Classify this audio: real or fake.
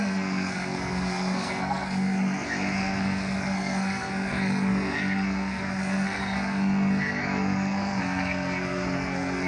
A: fake